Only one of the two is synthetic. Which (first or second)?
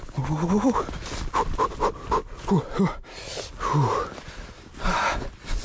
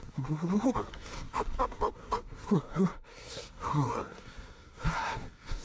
second